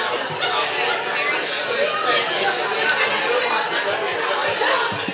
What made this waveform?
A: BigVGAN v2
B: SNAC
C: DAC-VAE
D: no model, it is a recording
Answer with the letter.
D